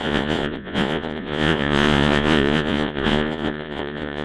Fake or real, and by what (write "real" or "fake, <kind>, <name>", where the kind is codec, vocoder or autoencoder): fake, vocoder, Vocos